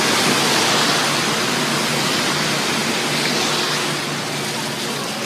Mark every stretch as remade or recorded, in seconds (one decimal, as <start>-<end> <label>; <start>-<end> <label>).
0.0-5.3 recorded